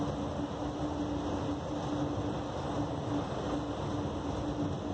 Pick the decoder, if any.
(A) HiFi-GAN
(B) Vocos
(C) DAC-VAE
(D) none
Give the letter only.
D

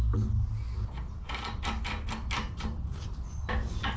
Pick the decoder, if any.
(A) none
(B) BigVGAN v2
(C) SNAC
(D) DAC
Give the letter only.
A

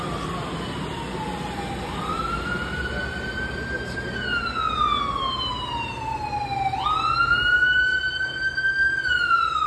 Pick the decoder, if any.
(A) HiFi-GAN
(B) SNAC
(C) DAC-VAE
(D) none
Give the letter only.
D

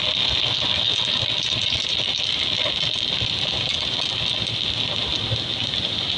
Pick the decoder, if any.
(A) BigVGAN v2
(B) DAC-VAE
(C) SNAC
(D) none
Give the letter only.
D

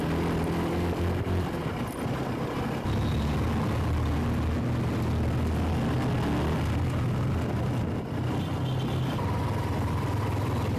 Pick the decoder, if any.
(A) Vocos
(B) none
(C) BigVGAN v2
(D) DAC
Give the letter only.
B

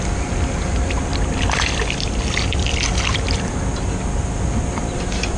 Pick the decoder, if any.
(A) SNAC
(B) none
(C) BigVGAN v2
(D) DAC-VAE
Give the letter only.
B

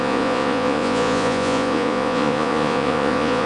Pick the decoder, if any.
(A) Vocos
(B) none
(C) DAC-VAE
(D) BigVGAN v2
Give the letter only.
A